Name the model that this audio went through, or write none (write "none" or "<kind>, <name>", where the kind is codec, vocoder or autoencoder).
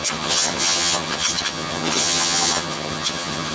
vocoder, HiFi-GAN